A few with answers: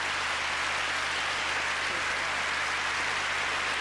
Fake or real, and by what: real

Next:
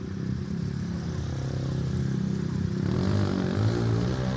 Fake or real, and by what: real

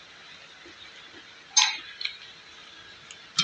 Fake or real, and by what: real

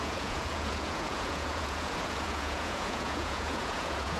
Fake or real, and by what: fake, vocoder, Vocos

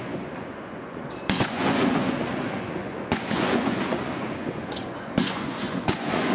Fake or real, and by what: fake, vocoder, Vocos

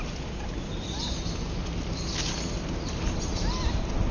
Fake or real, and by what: real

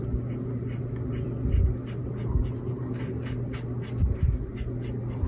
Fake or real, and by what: real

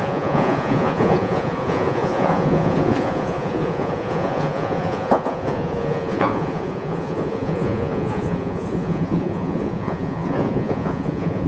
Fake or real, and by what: fake, vocoder, Vocos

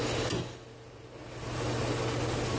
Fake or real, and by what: real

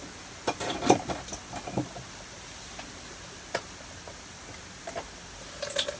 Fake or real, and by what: real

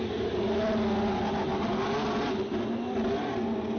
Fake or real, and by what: real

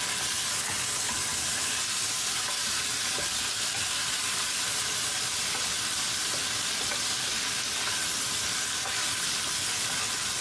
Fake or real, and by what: real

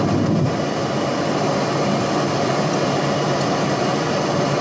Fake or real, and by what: real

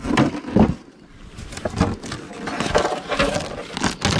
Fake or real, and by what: real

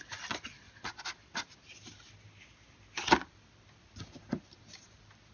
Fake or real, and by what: real